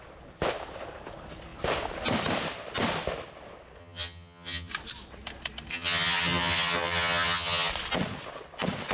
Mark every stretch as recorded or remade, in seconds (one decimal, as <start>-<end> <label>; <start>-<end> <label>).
0.0-3.8 recorded; 3.8-4.7 remade; 4.7-5.7 recorded; 5.7-7.7 remade; 7.7-8.9 recorded